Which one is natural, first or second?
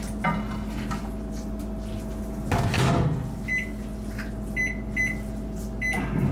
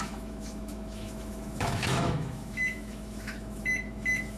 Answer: first